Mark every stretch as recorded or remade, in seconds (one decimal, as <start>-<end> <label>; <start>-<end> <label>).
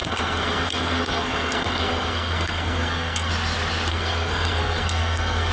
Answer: 0.0-3.3 remade; 3.3-3.9 recorded; 3.9-5.5 remade